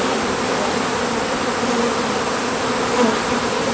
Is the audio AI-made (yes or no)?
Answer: no